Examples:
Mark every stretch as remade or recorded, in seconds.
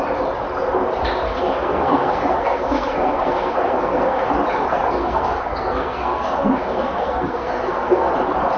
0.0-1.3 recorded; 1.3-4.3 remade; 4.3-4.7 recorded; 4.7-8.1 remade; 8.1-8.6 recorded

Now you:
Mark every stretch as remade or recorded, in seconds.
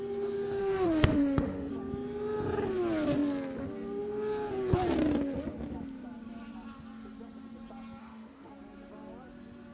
0.0-0.6 recorded; 0.6-1.7 remade; 1.7-8.0 recorded; 8.0-8.5 remade; 8.5-9.7 recorded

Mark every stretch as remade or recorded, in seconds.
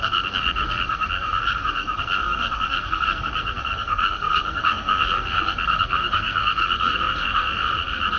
0.0-8.2 remade